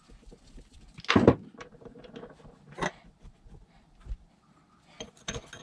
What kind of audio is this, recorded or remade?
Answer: recorded